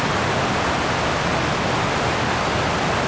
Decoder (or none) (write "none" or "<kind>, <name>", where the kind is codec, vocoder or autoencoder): none